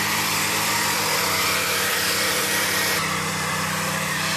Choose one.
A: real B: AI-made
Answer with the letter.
B